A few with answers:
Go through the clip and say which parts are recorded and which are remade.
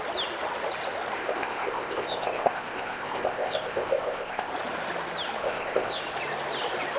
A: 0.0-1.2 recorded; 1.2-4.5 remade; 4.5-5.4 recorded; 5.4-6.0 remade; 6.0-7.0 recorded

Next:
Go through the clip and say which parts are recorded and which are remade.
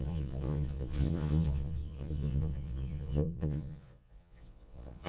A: 0.0-5.1 remade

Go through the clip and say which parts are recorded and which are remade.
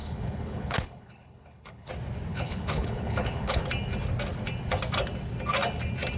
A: 0.0-1.9 remade; 1.9-2.3 recorded; 2.3-3.6 remade; 3.6-6.2 recorded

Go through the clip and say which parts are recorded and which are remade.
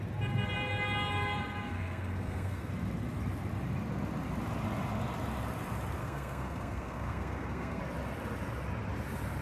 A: 0.0-1.6 recorded; 1.6-2.7 remade; 2.7-6.0 recorded; 6.0-7.8 remade; 7.8-9.4 recorded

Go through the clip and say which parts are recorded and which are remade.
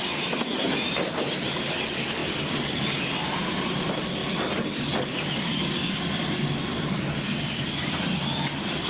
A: 0.0-2.2 recorded; 2.2-2.8 remade; 2.8-4.2 recorded; 4.2-5.5 remade; 5.5-6.7 recorded; 6.7-7.6 remade; 7.6-8.9 recorded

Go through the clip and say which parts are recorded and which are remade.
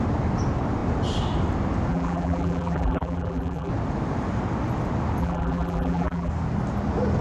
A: 0.0-1.9 recorded; 1.9-3.7 remade; 3.7-5.2 recorded; 5.2-6.3 remade; 6.3-7.2 recorded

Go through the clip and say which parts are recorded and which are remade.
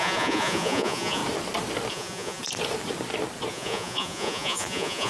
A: 0.0-1.2 remade; 1.2-1.9 recorded; 1.9-2.4 remade; 2.4-3.5 recorded; 3.5-5.1 remade